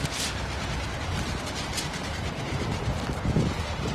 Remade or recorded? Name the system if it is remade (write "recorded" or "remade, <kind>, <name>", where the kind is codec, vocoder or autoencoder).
recorded